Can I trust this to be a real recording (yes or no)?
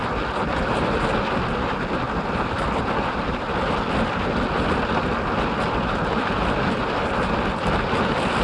yes